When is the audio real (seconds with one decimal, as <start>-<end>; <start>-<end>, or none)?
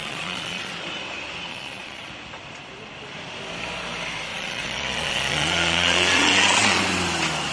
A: 0.7-1.5; 2.1-4.3; 6.8-7.5